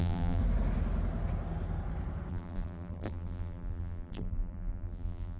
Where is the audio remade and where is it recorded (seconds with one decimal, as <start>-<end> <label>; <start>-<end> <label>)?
0.0-0.4 remade; 0.4-2.3 recorded; 2.3-5.4 remade